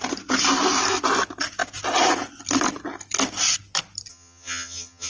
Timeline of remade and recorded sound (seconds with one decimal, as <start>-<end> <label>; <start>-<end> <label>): 0.0-4.1 recorded; 4.1-5.1 remade